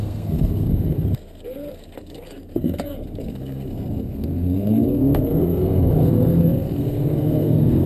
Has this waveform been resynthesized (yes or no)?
yes